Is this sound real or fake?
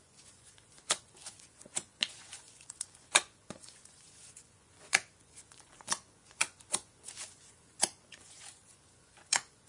fake